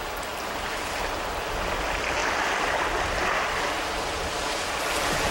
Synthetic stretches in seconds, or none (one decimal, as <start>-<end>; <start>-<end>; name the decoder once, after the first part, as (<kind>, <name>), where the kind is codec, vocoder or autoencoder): none